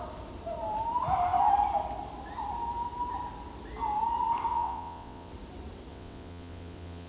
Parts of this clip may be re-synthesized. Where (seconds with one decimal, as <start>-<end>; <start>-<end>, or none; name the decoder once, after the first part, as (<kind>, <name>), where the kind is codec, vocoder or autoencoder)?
4.5-5.3 (vocoder, WaveNeXt); 5.9-7.1